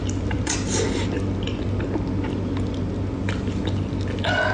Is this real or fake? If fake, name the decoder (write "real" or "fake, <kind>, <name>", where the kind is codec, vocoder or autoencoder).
real